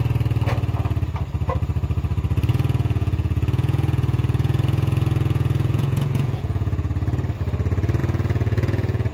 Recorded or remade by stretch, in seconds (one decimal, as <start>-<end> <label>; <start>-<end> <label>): 0.0-2.5 recorded; 2.5-6.9 remade; 6.9-8.0 recorded; 8.0-9.1 remade